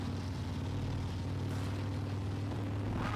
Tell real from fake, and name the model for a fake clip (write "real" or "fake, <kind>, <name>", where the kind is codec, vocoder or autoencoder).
real